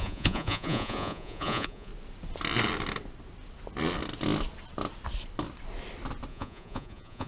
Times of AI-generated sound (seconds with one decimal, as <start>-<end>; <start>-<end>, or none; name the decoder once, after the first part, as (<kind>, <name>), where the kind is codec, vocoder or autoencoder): 0.0-1.9 (vocoder, Vocos); 6.3-7.3